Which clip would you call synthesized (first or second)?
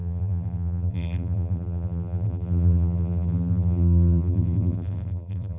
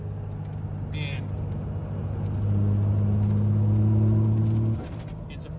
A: first